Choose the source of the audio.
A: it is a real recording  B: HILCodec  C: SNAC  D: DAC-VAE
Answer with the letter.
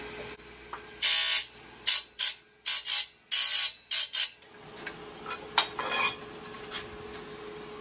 A